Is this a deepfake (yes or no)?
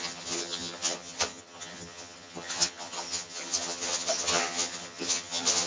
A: yes